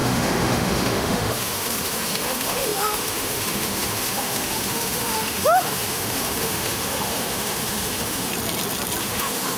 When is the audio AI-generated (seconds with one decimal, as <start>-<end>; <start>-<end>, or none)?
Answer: 0.0-8.3; 9.0-9.6